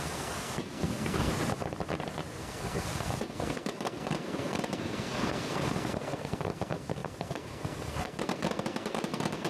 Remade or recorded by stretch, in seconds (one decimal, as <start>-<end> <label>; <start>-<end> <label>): 0.0-1.3 remade; 1.3-2.4 recorded; 2.4-9.5 remade